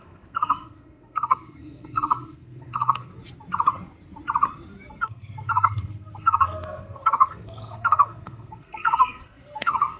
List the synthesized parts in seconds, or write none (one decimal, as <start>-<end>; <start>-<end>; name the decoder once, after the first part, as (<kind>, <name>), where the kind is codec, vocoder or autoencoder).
0.0-3.1 (codec, SNAC); 4.9-10.0